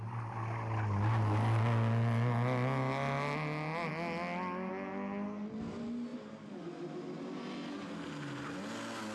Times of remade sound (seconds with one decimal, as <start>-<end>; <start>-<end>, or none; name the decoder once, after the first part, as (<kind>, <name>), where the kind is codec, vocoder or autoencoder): none